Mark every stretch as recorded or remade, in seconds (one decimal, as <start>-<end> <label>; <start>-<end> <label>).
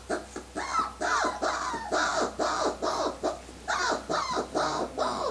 0.0-5.3 recorded